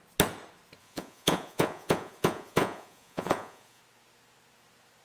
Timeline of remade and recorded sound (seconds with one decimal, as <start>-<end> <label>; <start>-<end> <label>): 0.0-0.8 recorded; 0.8-3.8 remade; 3.8-5.0 recorded